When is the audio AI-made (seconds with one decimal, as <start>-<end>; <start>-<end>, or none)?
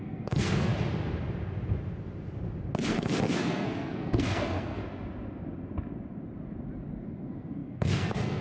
0.0-0.7; 2.9-4.8; 6.9-8.4